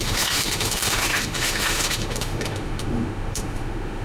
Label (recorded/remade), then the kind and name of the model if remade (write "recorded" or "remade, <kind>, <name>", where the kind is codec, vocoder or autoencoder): remade, autoencoder, DAC-VAE